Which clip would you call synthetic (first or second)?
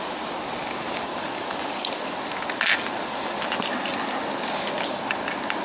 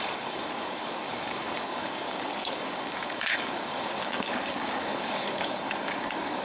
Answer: second